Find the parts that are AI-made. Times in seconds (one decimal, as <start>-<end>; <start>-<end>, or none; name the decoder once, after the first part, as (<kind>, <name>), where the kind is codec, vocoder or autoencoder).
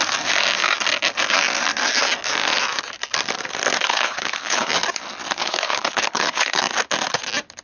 3.8-4.7 (codec, HILCodec); 5.4-6.6